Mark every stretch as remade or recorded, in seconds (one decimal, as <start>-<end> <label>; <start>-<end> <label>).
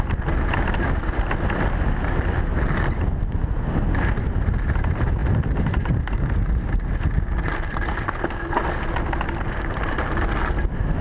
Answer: 0.0-11.0 recorded